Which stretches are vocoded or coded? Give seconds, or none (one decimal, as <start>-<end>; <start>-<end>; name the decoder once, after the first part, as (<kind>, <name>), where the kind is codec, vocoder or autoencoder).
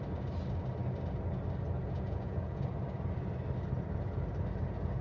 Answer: 1.8-2.7 (vocoder, Vocos)